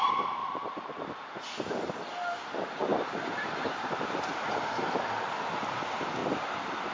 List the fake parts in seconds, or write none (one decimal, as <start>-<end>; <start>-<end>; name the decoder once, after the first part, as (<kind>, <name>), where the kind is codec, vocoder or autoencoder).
0.4-1.0 (vocoder, BigVGAN v2); 2.9-4.4